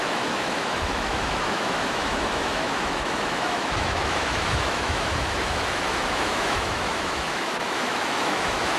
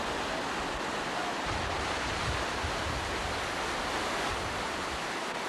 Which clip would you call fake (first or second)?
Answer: first